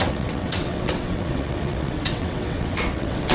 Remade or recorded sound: remade